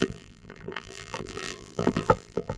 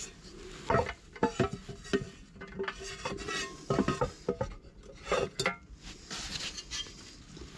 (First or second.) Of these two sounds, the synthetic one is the first